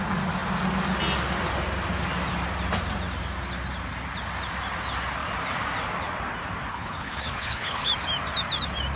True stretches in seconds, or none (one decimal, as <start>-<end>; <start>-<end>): 0.0-6.7; 7.9-9.0